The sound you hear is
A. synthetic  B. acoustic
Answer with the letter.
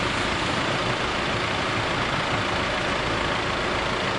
B